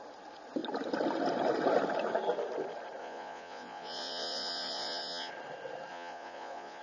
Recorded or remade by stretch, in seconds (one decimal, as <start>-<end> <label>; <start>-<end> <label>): 0.0-3.0 recorded; 3.0-5.3 remade; 5.3-5.9 recorded; 5.9-6.8 remade

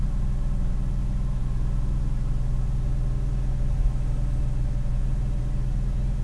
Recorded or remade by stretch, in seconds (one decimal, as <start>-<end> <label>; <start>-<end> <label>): 0.0-6.2 recorded

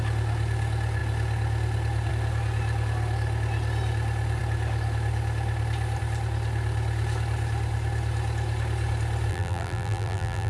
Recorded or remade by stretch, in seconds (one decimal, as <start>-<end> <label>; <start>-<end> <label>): 0.0-9.3 recorded; 9.3-10.5 remade

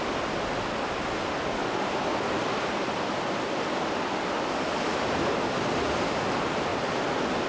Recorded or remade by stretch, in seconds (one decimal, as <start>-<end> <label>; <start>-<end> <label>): 0.0-7.5 recorded

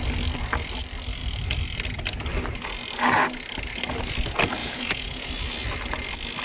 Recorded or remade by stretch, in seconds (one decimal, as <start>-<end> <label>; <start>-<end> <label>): 0.0-4.6 recorded; 4.6-5.3 remade; 5.3-6.4 recorded

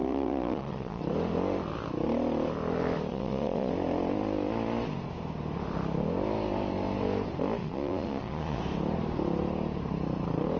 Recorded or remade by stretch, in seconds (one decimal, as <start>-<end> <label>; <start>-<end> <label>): 0.0-1.0 remade; 1.0-3.1 recorded; 3.1-3.7 remade; 3.7-7.6 recorded; 7.6-8.6 remade; 8.6-10.6 recorded